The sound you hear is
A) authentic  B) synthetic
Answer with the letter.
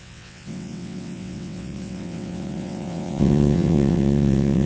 B